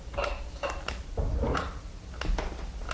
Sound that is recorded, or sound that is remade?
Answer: recorded